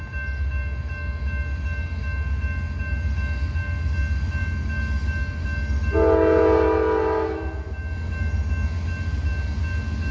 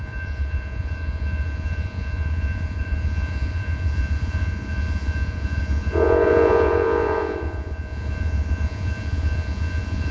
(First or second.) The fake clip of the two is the second